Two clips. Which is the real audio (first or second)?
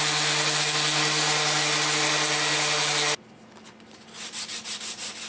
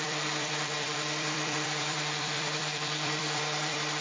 first